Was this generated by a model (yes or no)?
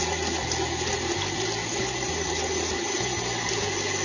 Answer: no